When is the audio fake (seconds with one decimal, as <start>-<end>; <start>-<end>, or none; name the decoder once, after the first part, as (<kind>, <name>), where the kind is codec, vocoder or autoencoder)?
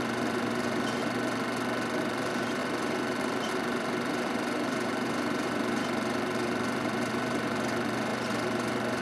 0.0-1.0 (vocoder, BigVGAN v2); 2.0-9.0